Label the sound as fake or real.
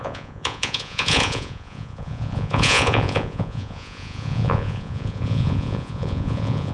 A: fake